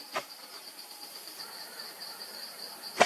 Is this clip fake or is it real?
fake